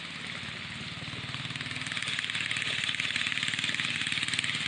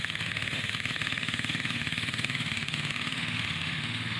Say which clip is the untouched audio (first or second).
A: first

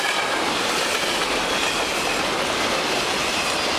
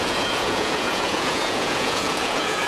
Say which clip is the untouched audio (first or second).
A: first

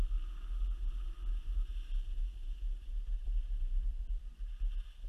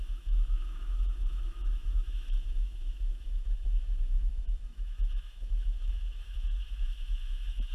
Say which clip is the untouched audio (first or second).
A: first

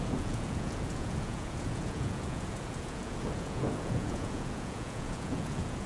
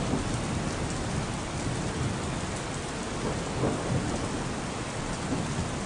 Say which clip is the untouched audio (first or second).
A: second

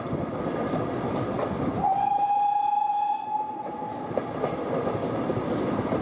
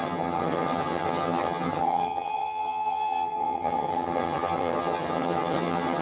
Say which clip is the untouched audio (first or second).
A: first